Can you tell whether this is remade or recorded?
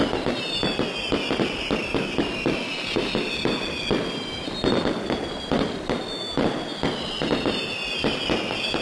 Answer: recorded